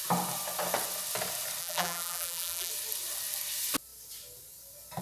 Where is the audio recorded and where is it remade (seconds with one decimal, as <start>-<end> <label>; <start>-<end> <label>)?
0.0-1.6 recorded; 1.6-2.7 remade; 2.7-5.0 recorded